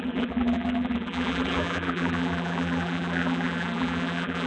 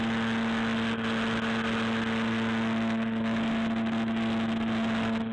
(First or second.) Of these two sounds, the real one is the second